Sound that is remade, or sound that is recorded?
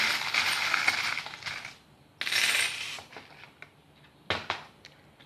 recorded